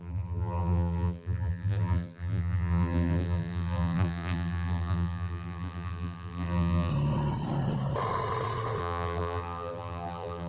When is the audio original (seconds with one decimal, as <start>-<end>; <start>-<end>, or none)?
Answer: 6.9-8.8